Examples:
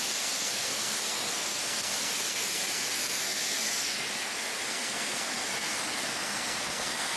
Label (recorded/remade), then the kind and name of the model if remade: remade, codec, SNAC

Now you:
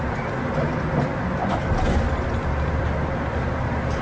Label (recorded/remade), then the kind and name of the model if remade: recorded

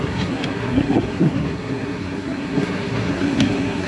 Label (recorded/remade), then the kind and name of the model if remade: remade, codec, SNAC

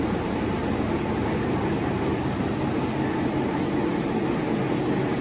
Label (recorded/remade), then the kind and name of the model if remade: recorded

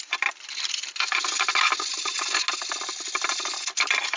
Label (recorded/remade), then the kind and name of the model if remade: recorded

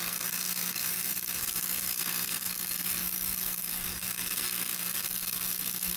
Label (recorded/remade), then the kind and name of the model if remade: remade, codec, SNAC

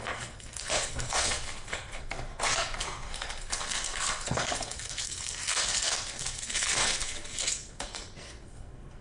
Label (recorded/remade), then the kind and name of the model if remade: remade, codec, SNAC